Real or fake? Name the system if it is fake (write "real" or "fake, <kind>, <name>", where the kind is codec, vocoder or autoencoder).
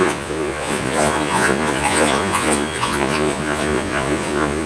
fake, vocoder, Vocos